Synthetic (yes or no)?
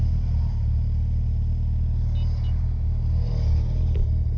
no